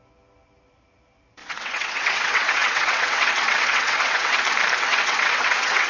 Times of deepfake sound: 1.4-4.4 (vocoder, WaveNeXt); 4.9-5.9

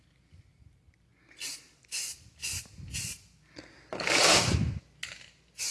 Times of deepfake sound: none

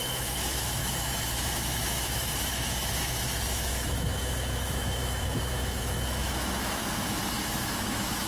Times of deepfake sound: 0.0-8.3 (autoencoder, DAC-VAE)

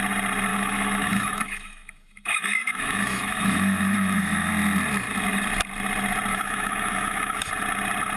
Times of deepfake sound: 0.5-4.5 (autoencoder, DAC-VAE); 6.3-7.5

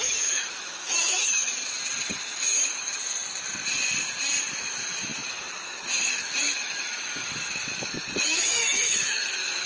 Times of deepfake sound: 0.0-1.5 (autoencoder, DAC-VAE); 2.1-2.9; 4.5-9.7

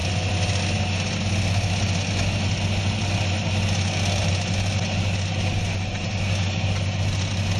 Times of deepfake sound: none